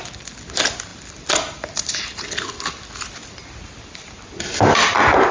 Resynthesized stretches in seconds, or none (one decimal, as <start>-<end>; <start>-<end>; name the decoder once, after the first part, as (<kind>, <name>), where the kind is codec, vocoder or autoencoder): none